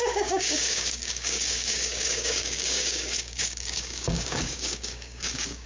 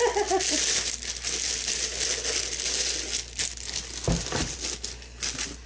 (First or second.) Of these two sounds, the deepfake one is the first